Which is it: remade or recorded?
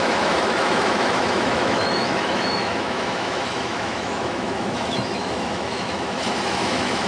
remade